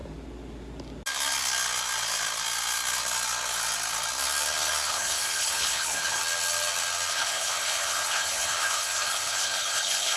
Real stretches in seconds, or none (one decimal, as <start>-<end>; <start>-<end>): 0.0-4.9; 6.2-7.1